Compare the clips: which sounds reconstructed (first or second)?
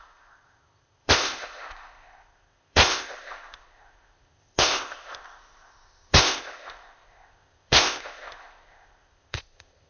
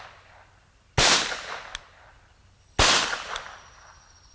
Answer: first